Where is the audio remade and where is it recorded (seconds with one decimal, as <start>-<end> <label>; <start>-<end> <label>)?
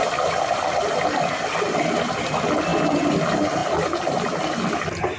0.0-5.2 recorded